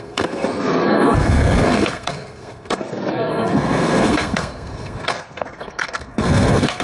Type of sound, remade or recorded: remade